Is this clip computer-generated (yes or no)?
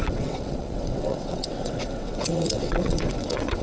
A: yes